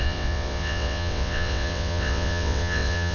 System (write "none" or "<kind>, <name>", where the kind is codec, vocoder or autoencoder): vocoder, WaveNeXt